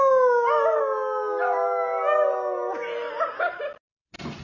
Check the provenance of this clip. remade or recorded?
recorded